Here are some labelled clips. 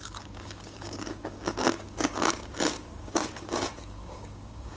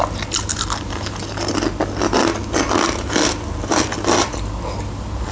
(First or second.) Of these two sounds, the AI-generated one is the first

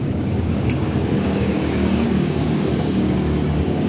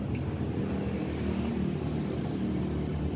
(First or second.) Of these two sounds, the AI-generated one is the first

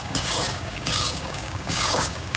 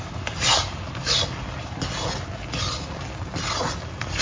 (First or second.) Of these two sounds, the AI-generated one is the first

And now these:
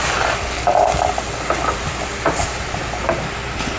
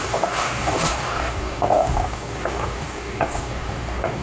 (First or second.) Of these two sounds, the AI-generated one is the second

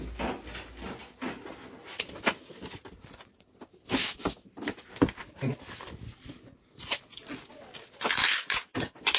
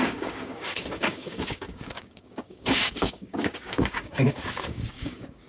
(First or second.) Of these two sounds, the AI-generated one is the second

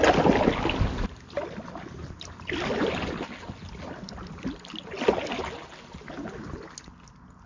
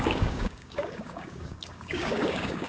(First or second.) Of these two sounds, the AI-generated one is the second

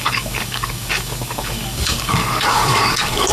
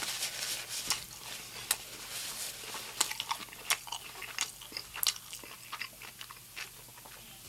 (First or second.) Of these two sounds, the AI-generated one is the first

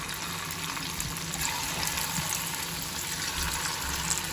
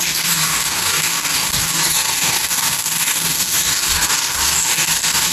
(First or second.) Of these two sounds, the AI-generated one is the second